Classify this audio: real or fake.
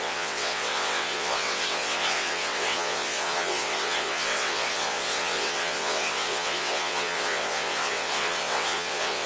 fake